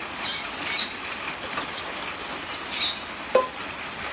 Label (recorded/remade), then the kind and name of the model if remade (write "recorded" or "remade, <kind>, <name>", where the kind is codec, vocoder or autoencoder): recorded